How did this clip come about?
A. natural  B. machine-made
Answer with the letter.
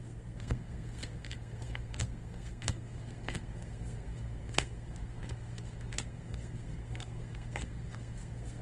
B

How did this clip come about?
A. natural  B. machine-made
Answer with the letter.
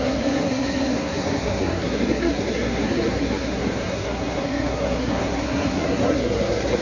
B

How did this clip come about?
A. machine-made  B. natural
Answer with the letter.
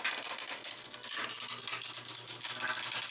B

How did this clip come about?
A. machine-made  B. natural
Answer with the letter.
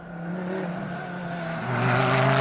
B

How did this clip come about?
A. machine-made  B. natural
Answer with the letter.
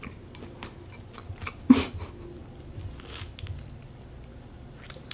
B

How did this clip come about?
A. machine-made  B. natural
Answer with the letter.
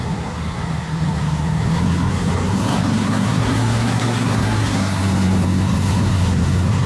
A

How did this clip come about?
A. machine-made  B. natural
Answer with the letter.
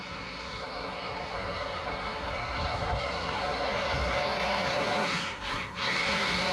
A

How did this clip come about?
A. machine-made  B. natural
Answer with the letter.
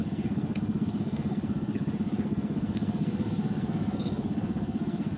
A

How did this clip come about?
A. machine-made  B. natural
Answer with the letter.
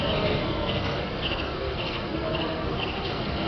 A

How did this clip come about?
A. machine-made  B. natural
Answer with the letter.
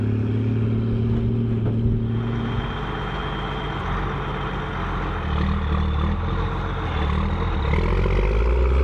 B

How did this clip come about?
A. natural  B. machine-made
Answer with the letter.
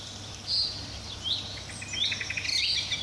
A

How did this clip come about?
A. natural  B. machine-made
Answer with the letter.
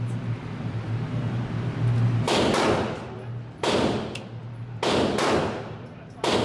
A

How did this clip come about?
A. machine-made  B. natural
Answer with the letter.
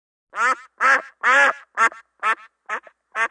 B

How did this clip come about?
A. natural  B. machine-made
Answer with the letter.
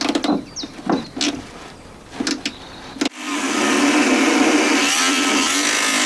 A